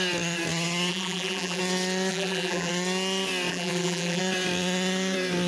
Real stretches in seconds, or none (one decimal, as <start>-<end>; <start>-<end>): 0.0-0.9; 1.6-2.1; 2.7-3.5; 4.2-5.5